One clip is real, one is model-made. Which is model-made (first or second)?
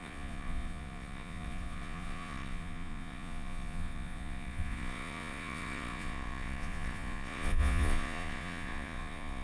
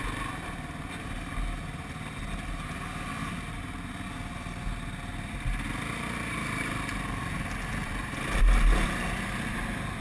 first